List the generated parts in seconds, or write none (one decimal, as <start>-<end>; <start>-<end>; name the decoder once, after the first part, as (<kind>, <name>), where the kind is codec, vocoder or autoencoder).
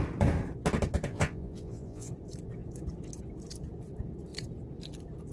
1.1-2.1 (vocoder, Vocos)